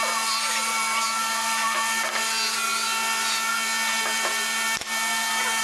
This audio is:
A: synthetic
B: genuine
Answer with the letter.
B